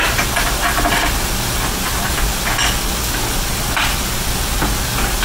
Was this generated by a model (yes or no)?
no